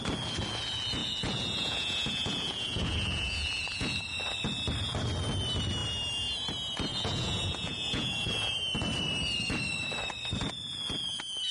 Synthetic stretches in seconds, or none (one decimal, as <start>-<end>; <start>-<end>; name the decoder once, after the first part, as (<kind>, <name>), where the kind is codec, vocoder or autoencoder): 1.0-4.0 (vocoder, Vocos); 6.9-8.5